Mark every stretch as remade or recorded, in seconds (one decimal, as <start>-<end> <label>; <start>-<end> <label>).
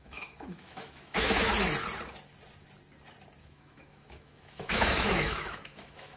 0.0-1.5 remade; 1.5-3.4 recorded; 3.4-6.2 remade